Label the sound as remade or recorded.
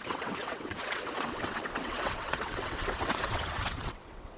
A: remade